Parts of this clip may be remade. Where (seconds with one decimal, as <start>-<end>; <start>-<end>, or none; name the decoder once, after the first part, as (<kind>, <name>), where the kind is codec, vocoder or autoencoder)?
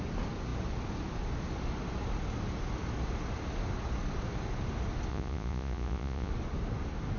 5.1-6.3 (vocoder, Vocos)